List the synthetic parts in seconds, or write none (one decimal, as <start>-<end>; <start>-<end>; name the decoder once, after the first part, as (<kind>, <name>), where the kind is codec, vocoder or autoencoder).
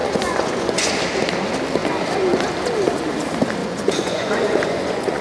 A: 0.0-0.9 (vocoder, Vocos); 3.6-5.2